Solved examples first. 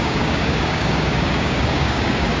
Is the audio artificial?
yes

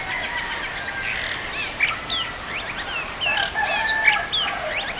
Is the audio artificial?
no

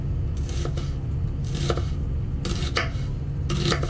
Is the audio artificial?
no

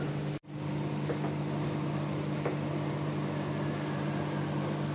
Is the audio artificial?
no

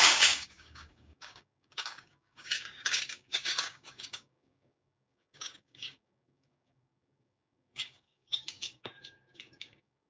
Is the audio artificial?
yes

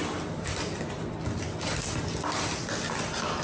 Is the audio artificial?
no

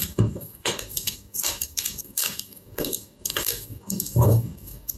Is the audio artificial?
yes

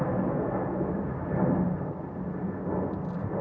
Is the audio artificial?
no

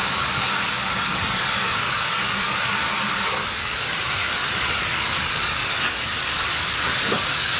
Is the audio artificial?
yes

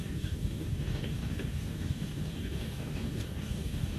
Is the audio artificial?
yes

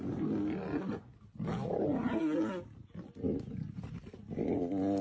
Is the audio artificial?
no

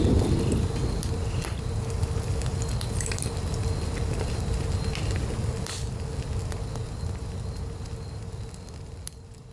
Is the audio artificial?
no